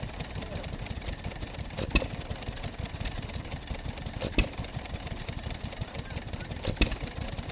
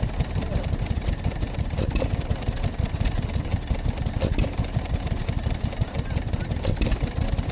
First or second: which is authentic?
second